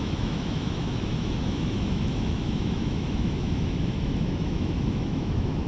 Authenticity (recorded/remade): remade